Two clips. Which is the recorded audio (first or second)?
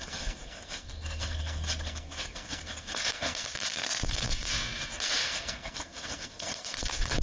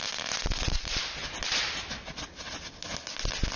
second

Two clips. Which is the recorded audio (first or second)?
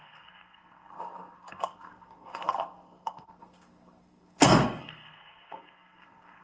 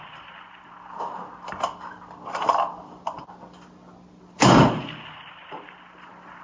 second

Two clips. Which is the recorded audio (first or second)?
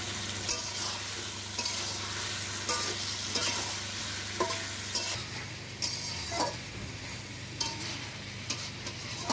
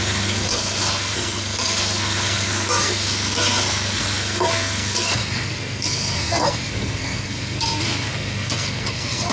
first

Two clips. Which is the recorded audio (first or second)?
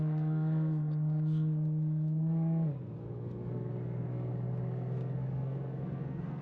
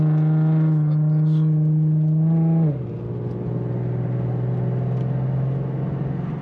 second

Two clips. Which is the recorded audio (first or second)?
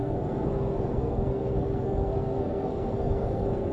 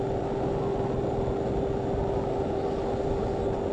second